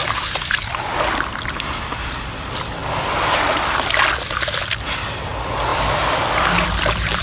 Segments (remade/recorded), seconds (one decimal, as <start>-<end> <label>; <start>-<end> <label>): 0.0-0.7 remade; 0.7-5.7 recorded; 5.7-7.2 remade